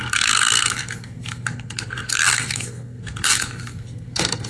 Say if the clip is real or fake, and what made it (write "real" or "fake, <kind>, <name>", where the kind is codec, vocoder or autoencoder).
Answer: fake, codec, SNAC